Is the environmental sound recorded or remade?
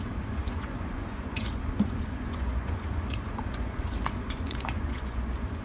remade